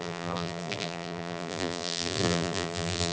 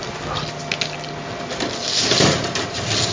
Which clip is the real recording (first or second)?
second